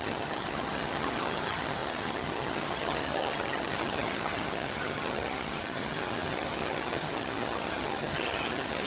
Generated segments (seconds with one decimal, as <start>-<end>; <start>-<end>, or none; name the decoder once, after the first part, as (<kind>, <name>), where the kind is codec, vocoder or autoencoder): 0.0-8.9 (vocoder, HiFi-GAN)